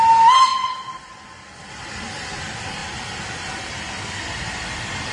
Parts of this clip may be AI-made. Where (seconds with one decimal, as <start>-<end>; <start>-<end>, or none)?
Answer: none